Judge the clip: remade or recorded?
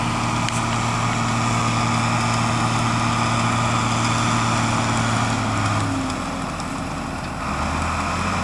recorded